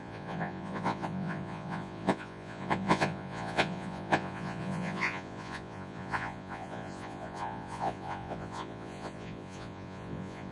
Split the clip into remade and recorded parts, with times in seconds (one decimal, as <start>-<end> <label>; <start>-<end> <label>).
0.0-10.5 remade